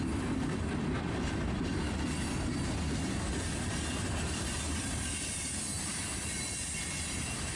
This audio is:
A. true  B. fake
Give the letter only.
A